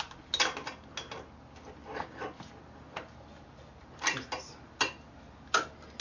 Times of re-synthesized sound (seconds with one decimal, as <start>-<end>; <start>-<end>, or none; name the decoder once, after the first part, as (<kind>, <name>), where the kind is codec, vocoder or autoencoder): none